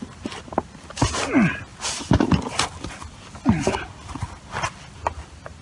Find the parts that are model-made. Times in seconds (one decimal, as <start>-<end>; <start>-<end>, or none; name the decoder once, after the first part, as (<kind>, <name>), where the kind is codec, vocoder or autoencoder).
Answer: none

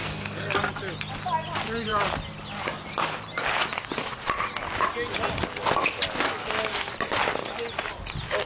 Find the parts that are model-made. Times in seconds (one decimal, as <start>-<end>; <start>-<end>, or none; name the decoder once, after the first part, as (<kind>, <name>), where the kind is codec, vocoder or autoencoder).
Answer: 0.0-0.5 (codec, SNAC)

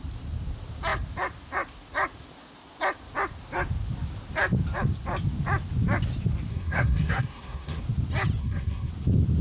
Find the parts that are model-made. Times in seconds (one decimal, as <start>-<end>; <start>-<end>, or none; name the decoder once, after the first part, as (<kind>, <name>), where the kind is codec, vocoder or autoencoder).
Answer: 6.5-7.8 (codec, SNAC); 8.4-8.9

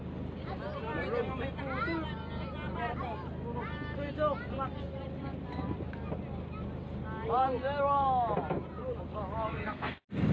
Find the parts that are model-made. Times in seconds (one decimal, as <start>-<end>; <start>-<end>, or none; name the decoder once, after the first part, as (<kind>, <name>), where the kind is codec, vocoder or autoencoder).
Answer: 9.5-10.3 (codec, SNAC)

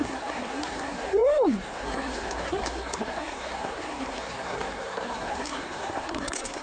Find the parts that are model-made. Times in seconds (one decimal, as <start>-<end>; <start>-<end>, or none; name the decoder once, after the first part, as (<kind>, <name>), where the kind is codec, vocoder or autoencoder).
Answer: 0.0-6.6 (codec, SNAC)

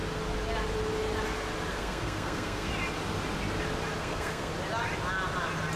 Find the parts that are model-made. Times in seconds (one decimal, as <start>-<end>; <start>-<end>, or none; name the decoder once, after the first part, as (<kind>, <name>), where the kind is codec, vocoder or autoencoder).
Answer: 1.7-2.7 (codec, SNAC); 4.0-4.5

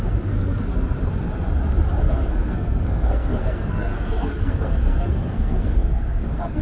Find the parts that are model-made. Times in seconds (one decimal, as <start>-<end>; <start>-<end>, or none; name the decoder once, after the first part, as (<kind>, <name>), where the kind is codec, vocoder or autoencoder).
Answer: 0.0-0.7 (codec, SNAC); 2.0-6.6